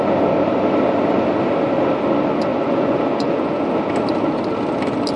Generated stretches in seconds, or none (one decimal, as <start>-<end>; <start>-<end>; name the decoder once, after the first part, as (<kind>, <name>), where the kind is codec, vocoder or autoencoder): 2.5-3.6 (vocoder, Vocos)